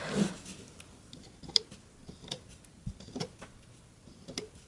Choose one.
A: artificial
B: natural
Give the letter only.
B